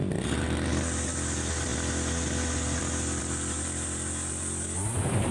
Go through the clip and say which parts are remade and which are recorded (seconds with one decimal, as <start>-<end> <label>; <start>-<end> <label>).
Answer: 0.0-5.3 recorded

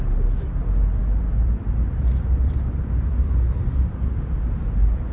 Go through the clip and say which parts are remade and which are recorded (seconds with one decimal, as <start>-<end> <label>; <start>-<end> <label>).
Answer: 0.0-1.0 recorded; 1.0-4.1 remade; 4.1-5.1 recorded

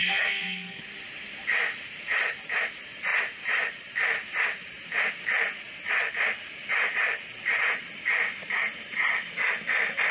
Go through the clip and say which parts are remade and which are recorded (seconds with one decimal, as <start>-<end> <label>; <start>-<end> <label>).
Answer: 0.0-0.8 remade; 0.8-10.1 recorded

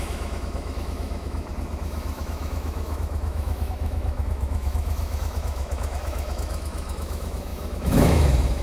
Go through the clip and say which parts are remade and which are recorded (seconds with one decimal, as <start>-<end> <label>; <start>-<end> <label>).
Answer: 0.0-8.6 remade

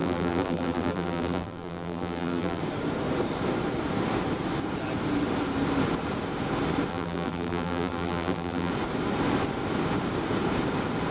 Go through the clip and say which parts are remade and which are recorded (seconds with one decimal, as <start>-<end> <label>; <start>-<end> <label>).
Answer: 0.0-2.6 remade; 2.6-6.9 recorded; 6.9-8.7 remade; 8.7-11.1 recorded

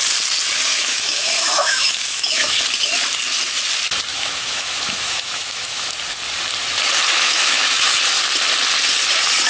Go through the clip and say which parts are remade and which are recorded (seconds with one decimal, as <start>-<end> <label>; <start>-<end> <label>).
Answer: 0.0-0.7 recorded; 0.7-2.6 remade; 2.6-4.1 recorded; 4.1-5.9 remade; 5.9-7.1 recorded; 7.1-7.9 remade; 7.9-9.5 recorded